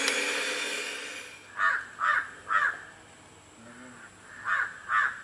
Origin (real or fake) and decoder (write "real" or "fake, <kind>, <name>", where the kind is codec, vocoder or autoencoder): real